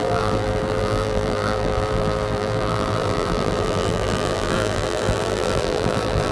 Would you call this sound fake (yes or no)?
yes